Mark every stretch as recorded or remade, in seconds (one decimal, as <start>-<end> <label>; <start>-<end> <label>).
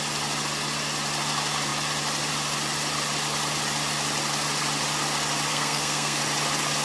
0.0-5.5 recorded; 5.5-6.2 remade; 6.2-6.8 recorded